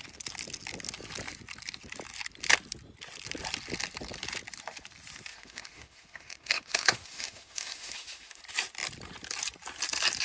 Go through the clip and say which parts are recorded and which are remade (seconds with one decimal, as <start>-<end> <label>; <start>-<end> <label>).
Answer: 0.0-5.3 recorded; 5.3-8.4 remade; 8.4-10.2 recorded